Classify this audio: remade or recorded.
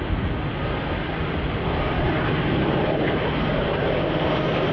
recorded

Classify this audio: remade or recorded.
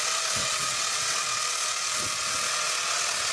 remade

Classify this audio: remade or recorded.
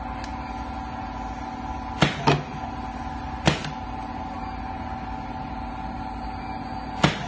recorded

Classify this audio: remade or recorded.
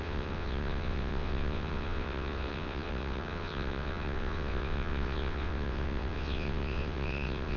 remade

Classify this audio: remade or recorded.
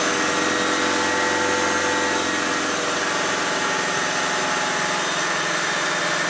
recorded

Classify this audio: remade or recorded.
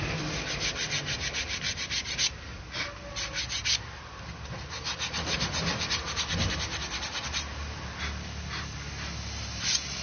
recorded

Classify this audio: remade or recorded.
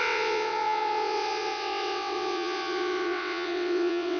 remade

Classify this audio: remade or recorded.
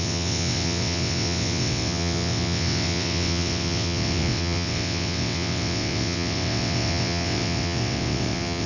remade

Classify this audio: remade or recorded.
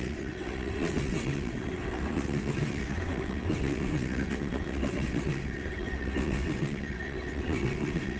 remade